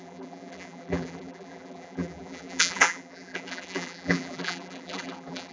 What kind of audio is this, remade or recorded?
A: remade